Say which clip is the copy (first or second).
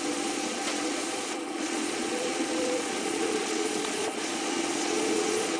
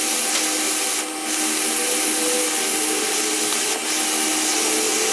first